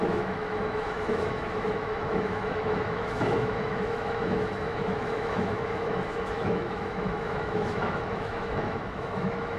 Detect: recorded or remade remade